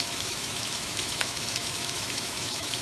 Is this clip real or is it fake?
fake